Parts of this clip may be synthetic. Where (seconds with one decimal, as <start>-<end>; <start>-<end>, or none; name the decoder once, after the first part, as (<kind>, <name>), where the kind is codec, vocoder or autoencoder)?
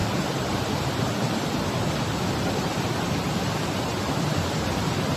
0.0-3.9 (vocoder, BigVGAN v2); 4.8-5.2